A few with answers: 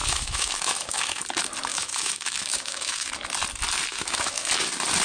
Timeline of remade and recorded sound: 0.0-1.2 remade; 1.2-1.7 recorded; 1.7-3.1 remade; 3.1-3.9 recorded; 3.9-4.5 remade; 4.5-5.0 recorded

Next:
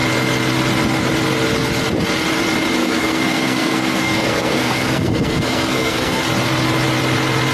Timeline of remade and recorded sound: 0.0-2.8 recorded; 2.8-6.2 remade; 6.2-7.5 recorded

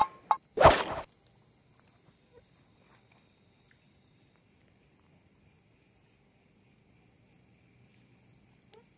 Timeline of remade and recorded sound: 0.0-9.0 recorded

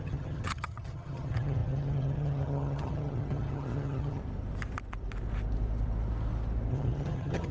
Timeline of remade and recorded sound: 0.0-4.2 remade; 4.2-6.7 recorded; 6.7-7.5 remade

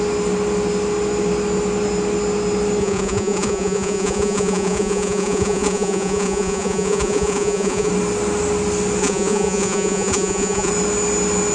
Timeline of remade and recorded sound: 0.0-2.8 recorded; 2.8-7.9 remade; 7.9-9.0 recorded; 9.0-10.7 remade; 10.7-11.5 recorded

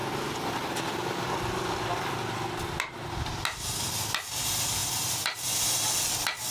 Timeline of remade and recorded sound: 0.0-1.8 remade; 1.8-6.5 recorded

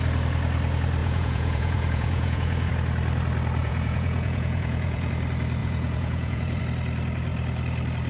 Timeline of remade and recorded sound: 0.0-1.0 recorded; 1.0-2.7 remade; 2.7-3.6 recorded; 3.6-5.1 remade; 5.1-5.6 recorded; 5.6-6.6 remade; 6.6-8.1 recorded

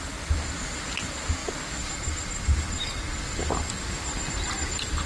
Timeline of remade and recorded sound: 0.0-5.1 recorded